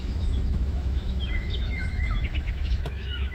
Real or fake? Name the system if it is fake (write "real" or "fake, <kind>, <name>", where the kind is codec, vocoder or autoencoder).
fake, autoencoder, DAC-VAE